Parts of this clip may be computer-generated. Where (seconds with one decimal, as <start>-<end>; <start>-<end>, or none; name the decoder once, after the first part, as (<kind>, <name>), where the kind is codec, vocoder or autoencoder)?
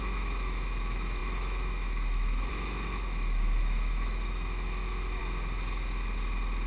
0.0-5.2 (autoencoder, DAC-VAE)